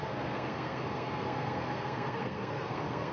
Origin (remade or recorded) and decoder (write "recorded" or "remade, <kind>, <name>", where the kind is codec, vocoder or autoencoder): remade, codec, SNAC